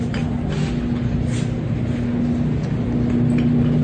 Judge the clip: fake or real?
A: real